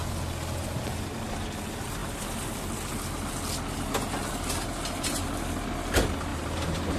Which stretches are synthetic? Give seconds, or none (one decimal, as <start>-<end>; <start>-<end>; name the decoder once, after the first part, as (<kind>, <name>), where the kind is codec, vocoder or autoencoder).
6.3-7.0 (vocoder, BigVGAN v2)